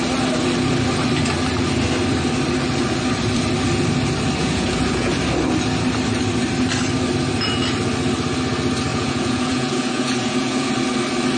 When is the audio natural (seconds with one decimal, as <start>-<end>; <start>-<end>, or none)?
0.0-4.4; 5.2-8.9; 10.7-11.4